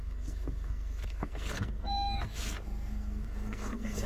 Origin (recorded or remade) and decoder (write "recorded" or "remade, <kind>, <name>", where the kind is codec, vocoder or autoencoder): remade, codec, SNAC